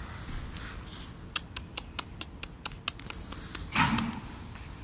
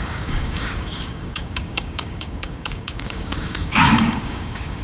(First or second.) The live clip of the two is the first